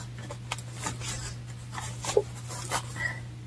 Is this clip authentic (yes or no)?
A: yes